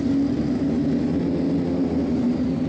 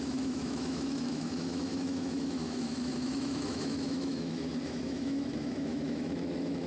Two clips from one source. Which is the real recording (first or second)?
first